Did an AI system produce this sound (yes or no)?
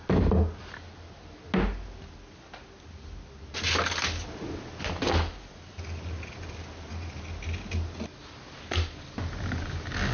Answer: no